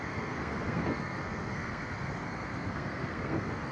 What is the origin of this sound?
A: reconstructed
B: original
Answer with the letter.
A